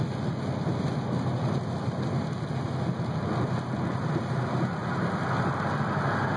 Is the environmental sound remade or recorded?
recorded